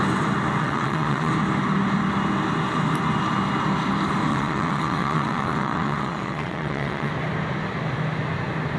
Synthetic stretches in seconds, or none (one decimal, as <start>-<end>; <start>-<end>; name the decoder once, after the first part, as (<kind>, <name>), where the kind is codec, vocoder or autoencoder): 0.6-1.3 (vocoder, WaveNeXt); 4.3-7.1